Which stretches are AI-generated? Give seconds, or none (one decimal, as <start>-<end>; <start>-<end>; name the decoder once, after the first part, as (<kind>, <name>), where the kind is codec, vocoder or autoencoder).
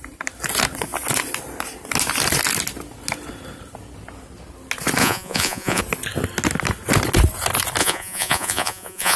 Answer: 5.0-5.8 (vocoder, Vocos); 7.8-9.2